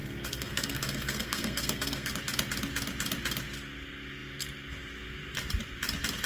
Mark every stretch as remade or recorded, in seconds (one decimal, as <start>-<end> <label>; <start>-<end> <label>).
0.0-2.1 remade; 2.1-6.3 recorded

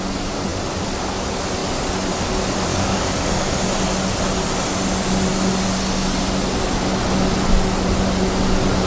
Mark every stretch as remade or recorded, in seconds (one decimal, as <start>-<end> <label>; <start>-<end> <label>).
0.0-2.7 recorded; 2.7-3.6 remade; 3.6-8.9 recorded

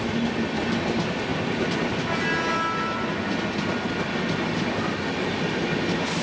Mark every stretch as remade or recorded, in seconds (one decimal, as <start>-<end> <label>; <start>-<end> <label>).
0.0-6.2 recorded

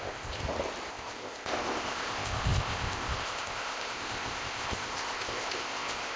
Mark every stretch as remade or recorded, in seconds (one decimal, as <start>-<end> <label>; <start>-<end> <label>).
0.0-0.4 remade; 0.4-0.9 recorded; 0.9-6.2 remade

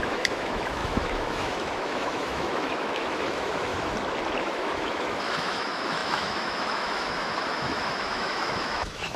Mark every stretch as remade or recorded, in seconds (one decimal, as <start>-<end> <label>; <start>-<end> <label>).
0.0-3.7 remade; 3.7-4.4 recorded; 4.4-9.2 remade

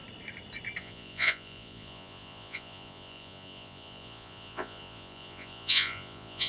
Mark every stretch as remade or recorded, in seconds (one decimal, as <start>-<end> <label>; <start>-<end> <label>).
0.0-0.8 recorded; 0.8-6.5 remade

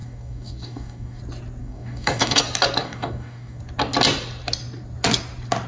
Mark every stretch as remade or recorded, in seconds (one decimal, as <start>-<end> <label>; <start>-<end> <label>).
0.0-1.2 remade; 1.2-1.6 recorded; 1.6-2.4 remade; 2.4-2.8 recorded; 2.8-3.6 remade; 3.6-5.7 recorded

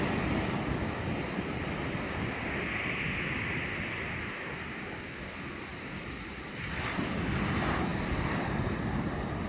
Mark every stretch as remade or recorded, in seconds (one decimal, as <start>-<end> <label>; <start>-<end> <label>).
0.0-9.5 recorded